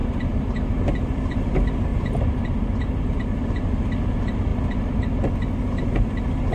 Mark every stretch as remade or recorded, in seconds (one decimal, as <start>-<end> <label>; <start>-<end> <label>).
0.0-1.4 remade; 1.4-1.9 recorded; 1.9-3.7 remade; 3.7-4.5 recorded; 4.5-5.0 remade; 5.0-6.5 recorded